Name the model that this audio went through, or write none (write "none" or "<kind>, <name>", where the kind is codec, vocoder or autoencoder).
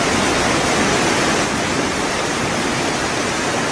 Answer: none